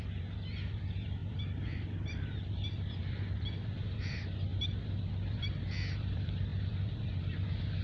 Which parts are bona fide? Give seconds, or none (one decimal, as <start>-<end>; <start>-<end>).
none